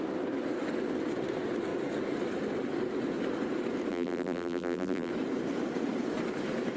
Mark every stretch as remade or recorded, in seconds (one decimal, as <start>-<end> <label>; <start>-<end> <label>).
0.0-3.9 recorded; 3.9-5.1 remade; 5.1-6.8 recorded